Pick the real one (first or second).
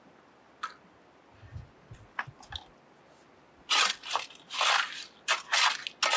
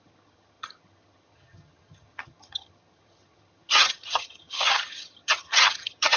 first